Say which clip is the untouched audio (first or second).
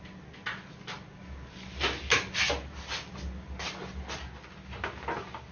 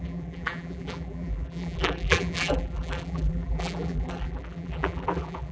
first